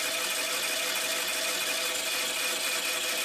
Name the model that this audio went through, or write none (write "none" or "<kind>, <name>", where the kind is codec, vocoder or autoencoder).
none